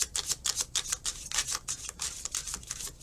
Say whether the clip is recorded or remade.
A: recorded